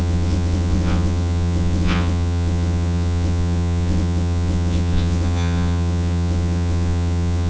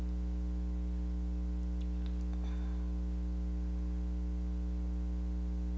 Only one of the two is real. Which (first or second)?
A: second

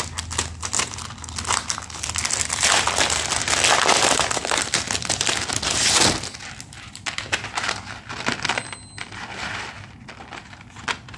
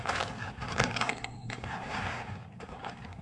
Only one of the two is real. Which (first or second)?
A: first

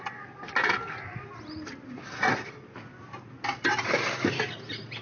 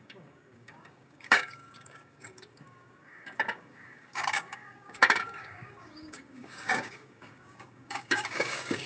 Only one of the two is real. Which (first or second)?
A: first